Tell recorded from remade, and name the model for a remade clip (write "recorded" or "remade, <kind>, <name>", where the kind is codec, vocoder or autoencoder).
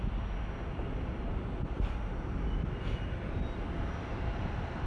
recorded